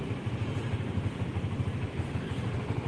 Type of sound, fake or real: real